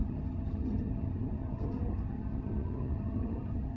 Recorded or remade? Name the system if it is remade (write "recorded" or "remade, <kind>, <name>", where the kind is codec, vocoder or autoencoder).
remade, vocoder, HiFi-GAN